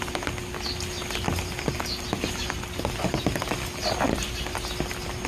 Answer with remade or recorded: recorded